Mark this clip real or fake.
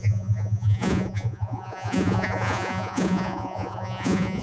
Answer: fake